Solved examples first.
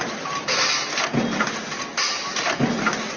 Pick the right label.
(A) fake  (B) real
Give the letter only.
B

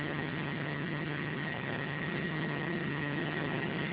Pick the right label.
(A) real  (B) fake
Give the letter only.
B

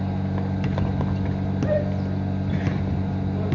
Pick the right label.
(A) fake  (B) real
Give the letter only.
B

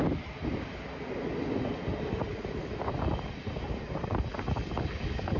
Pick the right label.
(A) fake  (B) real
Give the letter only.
B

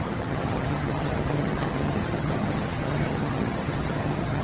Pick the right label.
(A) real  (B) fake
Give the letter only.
B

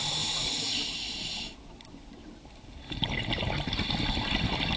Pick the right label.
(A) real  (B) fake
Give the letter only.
A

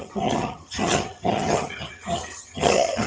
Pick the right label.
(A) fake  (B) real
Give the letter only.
A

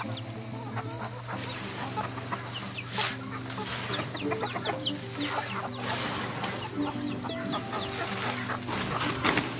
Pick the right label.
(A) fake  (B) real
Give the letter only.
B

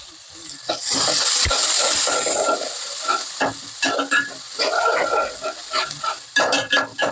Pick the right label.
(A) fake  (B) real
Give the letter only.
B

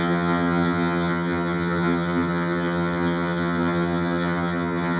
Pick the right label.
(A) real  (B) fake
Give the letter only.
B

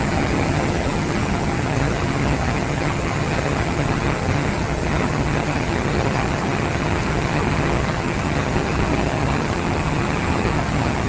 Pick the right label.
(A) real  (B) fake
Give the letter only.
B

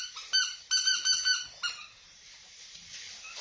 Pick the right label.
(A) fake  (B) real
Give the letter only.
B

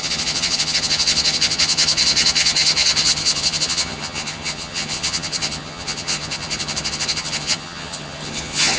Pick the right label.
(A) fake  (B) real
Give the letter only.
A